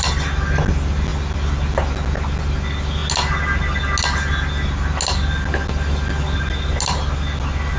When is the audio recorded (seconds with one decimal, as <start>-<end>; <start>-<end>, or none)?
0.0-7.8

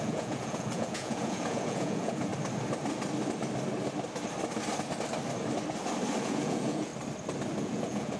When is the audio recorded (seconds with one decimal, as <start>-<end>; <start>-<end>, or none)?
2.3-6.2; 6.9-7.6

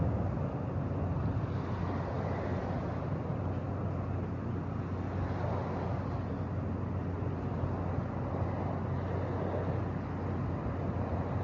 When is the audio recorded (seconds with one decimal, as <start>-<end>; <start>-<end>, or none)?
0.0-11.4

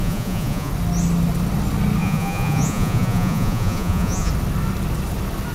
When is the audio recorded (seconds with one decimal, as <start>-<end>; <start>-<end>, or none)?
0.7-2.0; 4.3-5.5